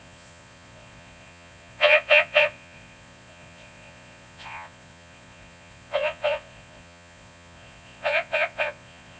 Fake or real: fake